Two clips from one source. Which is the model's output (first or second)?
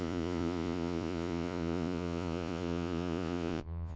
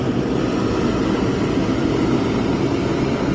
first